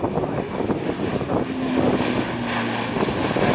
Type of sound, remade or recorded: recorded